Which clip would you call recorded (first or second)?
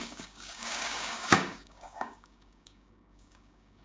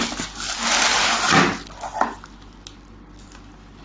second